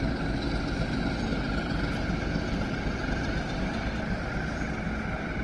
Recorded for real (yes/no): yes